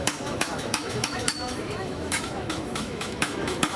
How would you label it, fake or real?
fake